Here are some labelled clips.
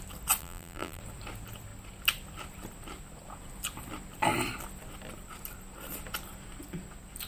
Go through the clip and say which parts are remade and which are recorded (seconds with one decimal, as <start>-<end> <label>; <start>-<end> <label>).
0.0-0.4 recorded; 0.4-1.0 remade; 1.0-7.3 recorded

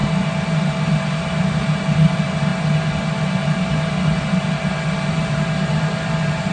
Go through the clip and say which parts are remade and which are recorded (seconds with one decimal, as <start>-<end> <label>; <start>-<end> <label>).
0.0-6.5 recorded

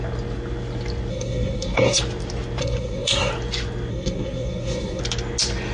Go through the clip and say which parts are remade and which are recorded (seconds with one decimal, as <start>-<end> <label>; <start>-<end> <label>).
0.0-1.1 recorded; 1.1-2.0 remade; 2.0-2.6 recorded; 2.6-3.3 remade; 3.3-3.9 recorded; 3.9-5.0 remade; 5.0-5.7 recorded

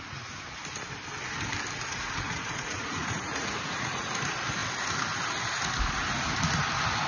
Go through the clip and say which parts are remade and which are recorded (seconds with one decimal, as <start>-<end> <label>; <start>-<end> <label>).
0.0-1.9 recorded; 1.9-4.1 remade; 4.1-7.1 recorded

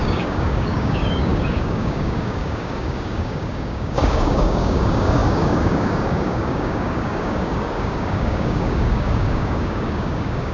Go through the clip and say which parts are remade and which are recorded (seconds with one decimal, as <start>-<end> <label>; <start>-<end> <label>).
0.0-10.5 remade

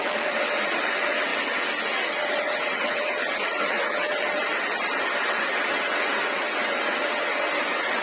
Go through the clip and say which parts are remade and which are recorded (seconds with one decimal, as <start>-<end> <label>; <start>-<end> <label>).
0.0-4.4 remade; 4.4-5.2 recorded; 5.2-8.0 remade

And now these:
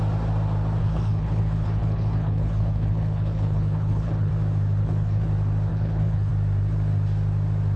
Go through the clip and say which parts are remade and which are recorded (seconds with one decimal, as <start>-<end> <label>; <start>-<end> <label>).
0.0-0.8 recorded; 0.8-4.3 remade; 4.3-4.8 recorded; 4.8-5.3 remade; 5.3-5.7 recorded; 5.7-6.3 remade; 6.3-7.8 recorded